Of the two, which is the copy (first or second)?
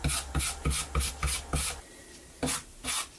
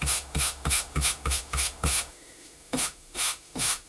second